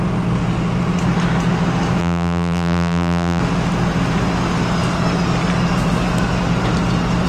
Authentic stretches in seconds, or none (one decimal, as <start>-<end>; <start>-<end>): 0.0-2.0; 3.4-7.3